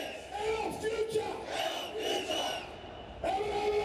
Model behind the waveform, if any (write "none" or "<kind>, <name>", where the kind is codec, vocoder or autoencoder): none